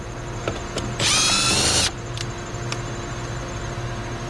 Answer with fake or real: real